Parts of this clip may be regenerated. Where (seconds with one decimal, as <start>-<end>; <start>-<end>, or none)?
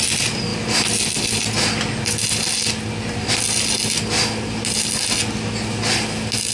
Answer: none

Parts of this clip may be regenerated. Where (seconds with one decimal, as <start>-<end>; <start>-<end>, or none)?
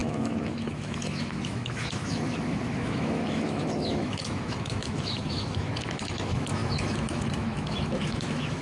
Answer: 0.0-8.6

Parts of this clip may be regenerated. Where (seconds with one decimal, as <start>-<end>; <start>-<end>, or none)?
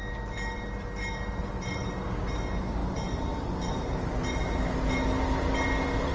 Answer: none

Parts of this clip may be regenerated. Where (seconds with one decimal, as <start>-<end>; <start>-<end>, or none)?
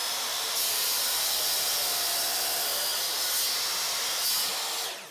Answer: 0.0-1.5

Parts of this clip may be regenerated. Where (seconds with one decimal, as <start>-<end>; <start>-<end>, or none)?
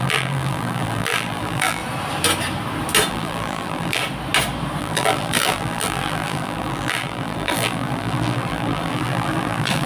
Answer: 0.0-1.8; 3.1-4.0; 4.8-9.9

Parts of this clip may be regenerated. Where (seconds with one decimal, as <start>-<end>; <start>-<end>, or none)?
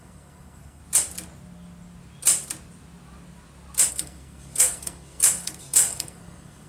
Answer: 0.0-0.8; 3.9-6.7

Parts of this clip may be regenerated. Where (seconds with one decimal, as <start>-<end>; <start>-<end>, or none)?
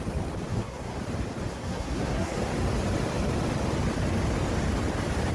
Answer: 0.5-1.0; 1.5-2.4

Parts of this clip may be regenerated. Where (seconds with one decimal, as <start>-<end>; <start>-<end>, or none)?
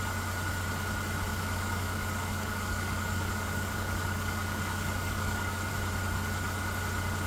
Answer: 1.3-5.7